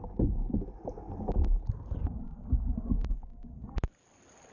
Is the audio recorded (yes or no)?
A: yes